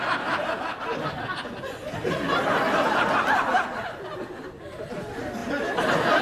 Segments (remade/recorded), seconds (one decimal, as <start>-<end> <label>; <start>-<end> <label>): 0.0-6.2 recorded